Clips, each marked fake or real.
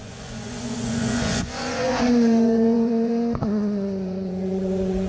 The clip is fake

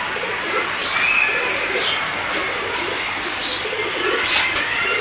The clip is real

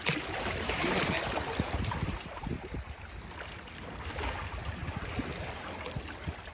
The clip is real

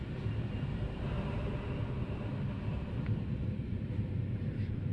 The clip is fake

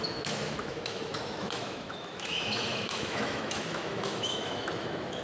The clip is fake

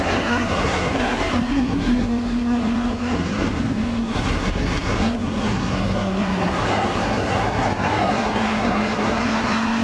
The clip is fake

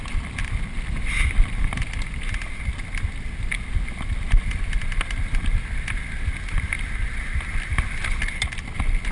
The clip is real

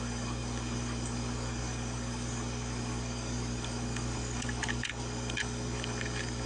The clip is fake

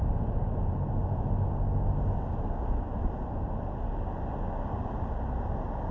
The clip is real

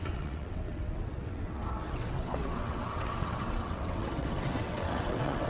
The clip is fake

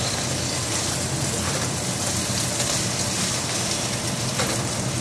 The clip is real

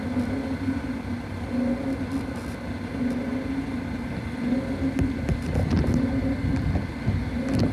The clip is real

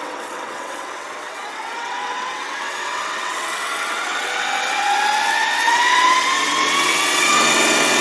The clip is fake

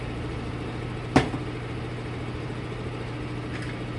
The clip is fake